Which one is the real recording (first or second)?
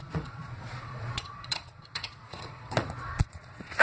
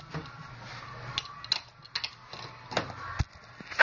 second